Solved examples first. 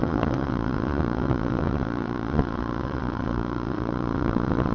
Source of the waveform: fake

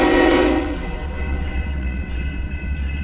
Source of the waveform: fake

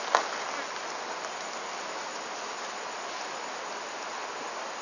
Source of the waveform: real